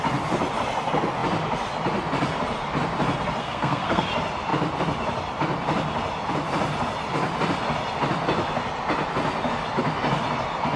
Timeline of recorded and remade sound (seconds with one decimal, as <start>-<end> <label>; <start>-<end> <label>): 0.0-3.4 recorded; 3.4-4.0 remade; 4.0-10.8 recorded